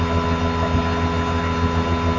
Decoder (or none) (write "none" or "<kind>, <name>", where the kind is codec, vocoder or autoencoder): none